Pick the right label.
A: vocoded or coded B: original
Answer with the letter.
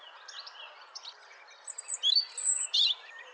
A